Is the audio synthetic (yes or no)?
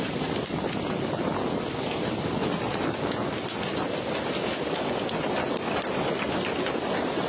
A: no